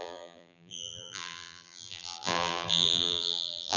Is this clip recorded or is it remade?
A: remade